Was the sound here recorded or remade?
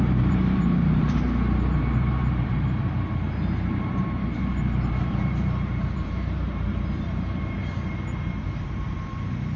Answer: remade